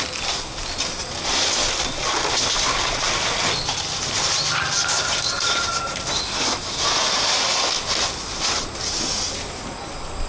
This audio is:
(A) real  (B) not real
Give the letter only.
A